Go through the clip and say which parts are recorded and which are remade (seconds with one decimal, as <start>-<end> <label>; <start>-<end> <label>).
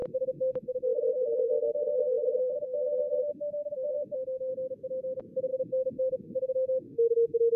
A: 0.0-4.5 remade; 4.5-5.5 recorded; 5.5-7.6 remade